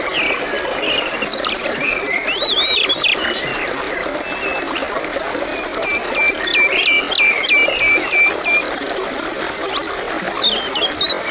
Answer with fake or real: real